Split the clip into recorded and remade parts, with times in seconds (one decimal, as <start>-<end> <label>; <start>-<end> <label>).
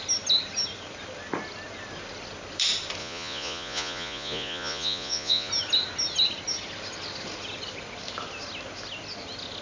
0.0-3.0 recorded; 3.0-5.5 remade; 5.5-9.6 recorded